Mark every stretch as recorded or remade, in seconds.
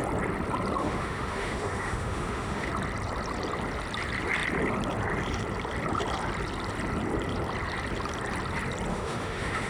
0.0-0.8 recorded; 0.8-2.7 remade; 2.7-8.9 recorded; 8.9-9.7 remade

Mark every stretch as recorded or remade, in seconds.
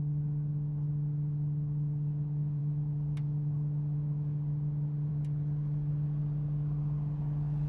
0.0-7.7 recorded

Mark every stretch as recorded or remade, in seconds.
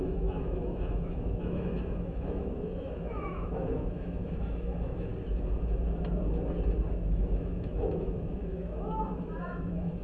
0.0-5.1 remade; 5.1-6.9 recorded; 6.9-10.0 remade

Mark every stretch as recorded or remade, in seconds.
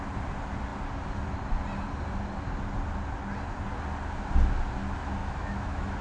0.0-5.2 recorded; 5.2-6.0 remade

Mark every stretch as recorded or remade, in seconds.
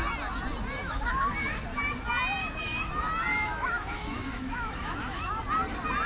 0.0-0.8 recorded; 0.8-1.6 remade; 1.6-2.4 recorded; 2.4-2.9 remade; 2.9-3.3 recorded; 3.3-5.3 remade; 5.3-6.1 recorded